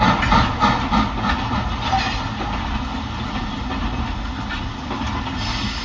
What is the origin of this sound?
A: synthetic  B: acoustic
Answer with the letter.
B